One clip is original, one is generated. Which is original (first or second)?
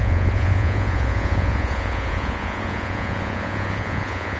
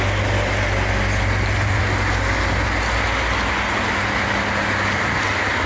second